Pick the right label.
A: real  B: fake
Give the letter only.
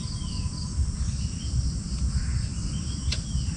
A